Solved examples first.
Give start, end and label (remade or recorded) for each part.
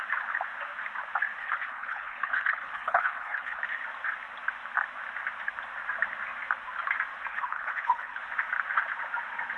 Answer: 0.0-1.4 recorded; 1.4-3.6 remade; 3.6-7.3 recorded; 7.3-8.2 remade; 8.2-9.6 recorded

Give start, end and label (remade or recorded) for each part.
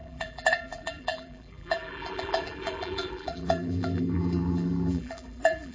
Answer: 0.0-5.7 remade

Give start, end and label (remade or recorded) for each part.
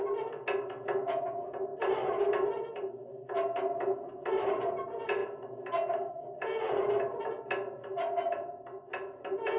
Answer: 0.0-9.6 recorded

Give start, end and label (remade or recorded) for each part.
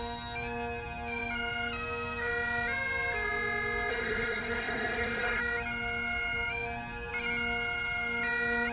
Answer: 0.0-3.9 recorded; 3.9-5.4 remade; 5.4-8.7 recorded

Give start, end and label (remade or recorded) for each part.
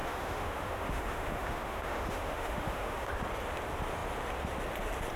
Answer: 0.0-3.1 remade; 3.1-5.2 recorded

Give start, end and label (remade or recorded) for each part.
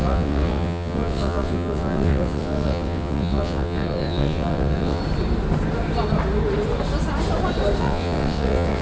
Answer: 0.0-5.0 remade; 5.0-7.8 recorded; 7.8-8.8 remade